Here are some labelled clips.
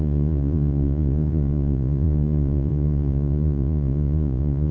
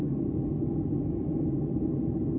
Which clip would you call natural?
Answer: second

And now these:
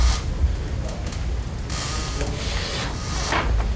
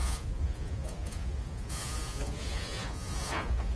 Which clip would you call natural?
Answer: first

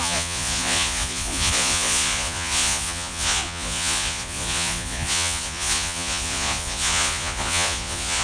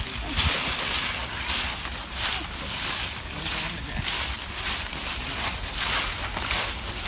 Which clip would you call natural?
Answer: second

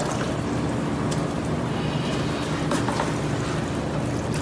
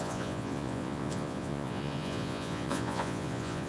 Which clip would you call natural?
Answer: first